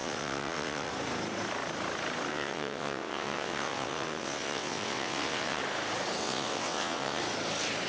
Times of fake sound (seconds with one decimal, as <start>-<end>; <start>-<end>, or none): 0.0-0.9; 2.3-5.6; 6.2-7.2